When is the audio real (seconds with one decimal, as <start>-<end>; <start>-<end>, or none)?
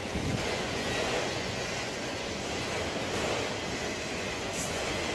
2.7-3.8